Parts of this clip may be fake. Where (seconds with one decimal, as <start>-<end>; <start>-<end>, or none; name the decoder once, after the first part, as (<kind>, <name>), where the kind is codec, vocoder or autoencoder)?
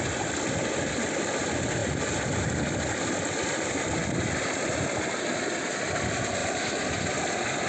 6.4-7.2 (vocoder, BigVGAN v2)